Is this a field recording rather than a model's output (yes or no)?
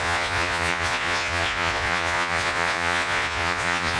no